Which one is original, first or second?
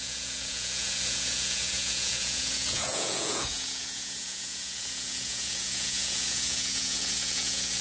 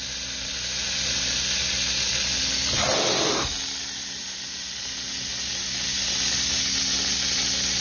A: second